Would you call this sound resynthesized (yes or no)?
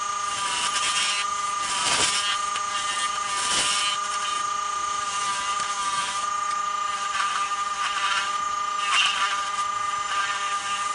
no